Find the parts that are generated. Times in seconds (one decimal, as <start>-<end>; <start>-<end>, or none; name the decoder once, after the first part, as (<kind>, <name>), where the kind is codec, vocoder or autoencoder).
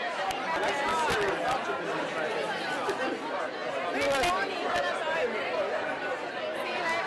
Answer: none